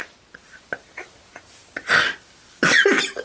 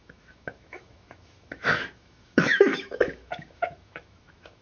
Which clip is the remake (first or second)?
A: second